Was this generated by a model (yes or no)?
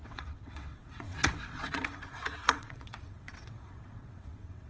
yes